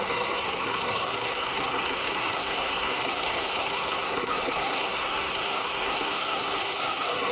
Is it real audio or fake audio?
fake